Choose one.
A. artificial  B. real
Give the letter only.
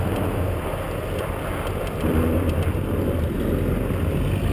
B